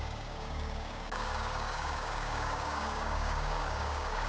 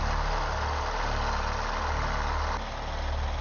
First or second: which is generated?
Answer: first